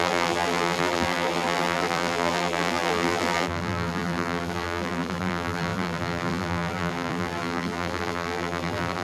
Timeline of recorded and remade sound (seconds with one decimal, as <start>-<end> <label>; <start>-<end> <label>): 0.0-9.0 remade